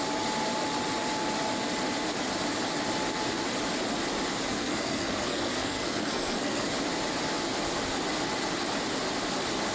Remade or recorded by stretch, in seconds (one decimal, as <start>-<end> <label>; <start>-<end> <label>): 0.0-4.5 recorded; 4.5-6.7 remade; 6.7-9.7 recorded